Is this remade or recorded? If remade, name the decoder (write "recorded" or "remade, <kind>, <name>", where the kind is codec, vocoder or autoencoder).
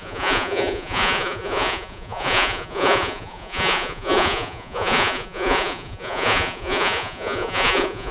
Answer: remade, vocoder, Vocos